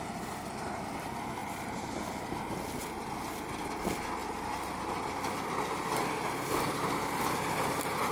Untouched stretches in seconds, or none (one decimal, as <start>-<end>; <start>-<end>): 0.0-1.4; 2.0-4.2; 4.7-8.1